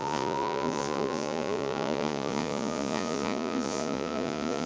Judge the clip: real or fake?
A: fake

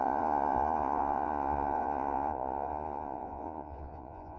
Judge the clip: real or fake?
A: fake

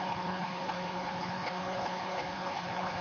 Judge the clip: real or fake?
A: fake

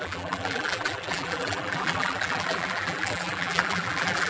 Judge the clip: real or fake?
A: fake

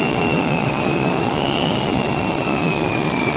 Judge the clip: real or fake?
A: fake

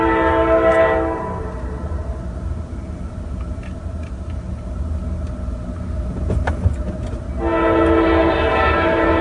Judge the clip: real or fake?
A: real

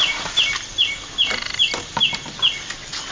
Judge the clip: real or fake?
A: real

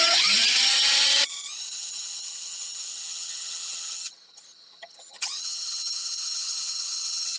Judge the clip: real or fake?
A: fake